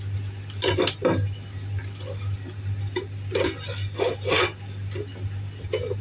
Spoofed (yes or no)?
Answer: no